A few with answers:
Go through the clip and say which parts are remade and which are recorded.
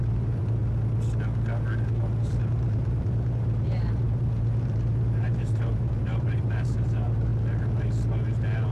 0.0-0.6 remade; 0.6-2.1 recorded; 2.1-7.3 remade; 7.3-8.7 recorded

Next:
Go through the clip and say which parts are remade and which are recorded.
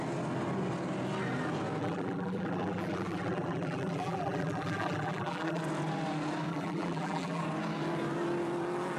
0.0-1.8 recorded; 1.8-5.6 remade; 5.6-6.5 recorded; 6.5-7.4 remade; 7.4-9.0 recorded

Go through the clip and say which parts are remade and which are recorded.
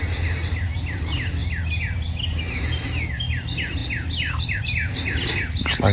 0.0-5.9 recorded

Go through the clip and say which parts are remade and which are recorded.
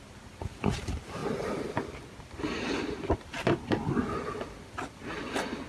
0.0-1.2 remade; 1.2-2.2 recorded; 2.2-5.7 remade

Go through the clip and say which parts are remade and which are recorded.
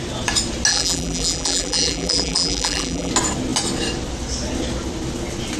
0.0-0.7 recorded; 0.7-3.1 remade; 3.1-5.6 recorded